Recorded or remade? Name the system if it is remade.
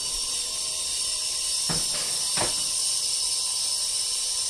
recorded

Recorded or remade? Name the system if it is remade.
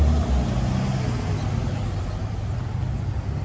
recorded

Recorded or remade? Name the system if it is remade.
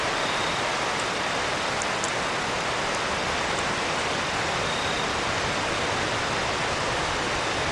recorded